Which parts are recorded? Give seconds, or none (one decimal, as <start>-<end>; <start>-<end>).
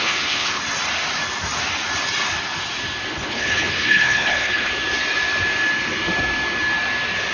0.6-3.1; 4.7-7.3